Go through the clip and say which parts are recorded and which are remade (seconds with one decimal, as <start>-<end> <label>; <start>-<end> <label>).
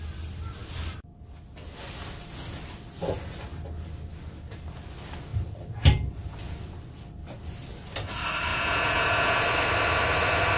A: 0.0-8.5 recorded; 8.5-9.4 remade; 9.4-10.6 recorded